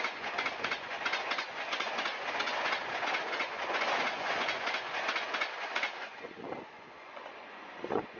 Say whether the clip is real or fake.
fake